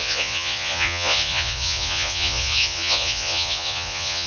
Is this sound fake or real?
fake